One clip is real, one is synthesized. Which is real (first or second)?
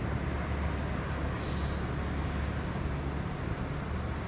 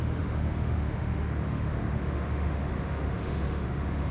first